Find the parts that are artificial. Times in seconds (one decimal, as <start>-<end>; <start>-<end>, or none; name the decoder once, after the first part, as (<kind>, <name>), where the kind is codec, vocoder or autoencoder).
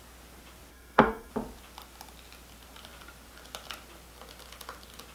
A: 0.7-1.3 (codec, SNAC)